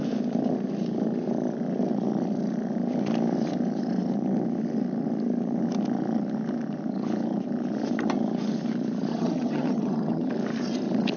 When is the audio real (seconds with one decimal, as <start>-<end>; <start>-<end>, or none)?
0.0-9.1; 10.3-11.2